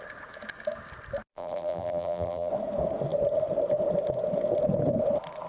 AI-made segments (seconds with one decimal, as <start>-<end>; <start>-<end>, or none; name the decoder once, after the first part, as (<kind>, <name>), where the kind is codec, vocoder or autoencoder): 1.3-2.5 (vocoder, BigVGAN v2)